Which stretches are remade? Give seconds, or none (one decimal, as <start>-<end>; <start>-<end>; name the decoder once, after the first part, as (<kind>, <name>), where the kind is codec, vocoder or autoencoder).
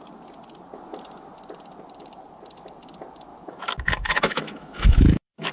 3.3-5.5 (autoencoder, DAC-VAE)